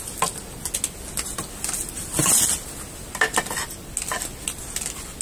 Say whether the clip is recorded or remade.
recorded